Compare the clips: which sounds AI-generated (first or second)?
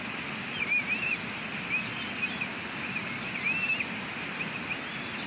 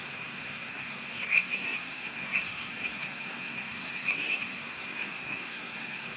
second